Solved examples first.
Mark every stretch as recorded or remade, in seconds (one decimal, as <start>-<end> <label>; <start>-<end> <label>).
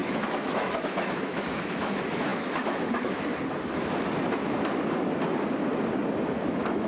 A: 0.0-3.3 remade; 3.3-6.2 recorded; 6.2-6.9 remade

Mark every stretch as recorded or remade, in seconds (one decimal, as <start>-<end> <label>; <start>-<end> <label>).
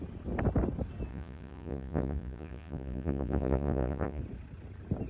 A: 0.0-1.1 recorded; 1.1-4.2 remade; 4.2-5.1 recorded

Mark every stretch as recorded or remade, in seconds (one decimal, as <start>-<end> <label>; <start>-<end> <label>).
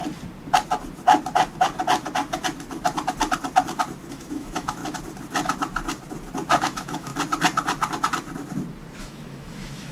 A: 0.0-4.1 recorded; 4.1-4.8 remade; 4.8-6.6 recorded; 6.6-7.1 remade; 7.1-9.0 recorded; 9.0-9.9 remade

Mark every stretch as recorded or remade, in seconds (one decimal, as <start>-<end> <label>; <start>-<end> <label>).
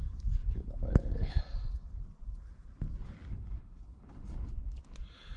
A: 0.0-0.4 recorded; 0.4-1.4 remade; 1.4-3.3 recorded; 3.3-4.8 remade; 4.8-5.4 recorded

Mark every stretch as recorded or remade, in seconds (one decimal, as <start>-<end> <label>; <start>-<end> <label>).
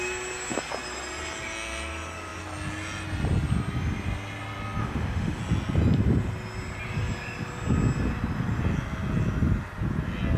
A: 0.0-4.8 recorded; 4.8-5.4 remade; 5.4-10.4 recorded